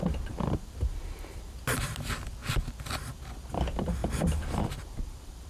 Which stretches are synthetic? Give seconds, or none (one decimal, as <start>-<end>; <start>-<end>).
0.0-2.4; 2.9-4.0; 4.7-5.5